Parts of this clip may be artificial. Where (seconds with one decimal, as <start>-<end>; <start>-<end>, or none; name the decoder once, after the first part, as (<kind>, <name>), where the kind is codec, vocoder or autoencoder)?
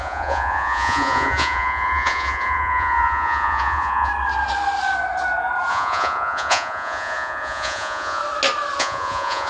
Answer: 0.0-4.1 (vocoder, Vocos); 5.7-8.2; 8.8-9.5